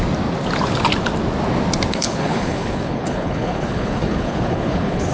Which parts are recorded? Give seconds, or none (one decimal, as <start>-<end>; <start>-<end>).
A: 0.0-1.9